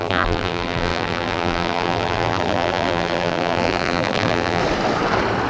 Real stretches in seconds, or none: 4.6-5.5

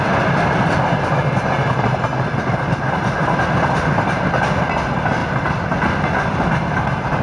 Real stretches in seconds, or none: 0.0-7.2